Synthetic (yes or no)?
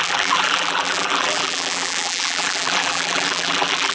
yes